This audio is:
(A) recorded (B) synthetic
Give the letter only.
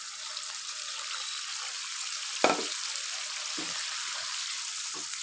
B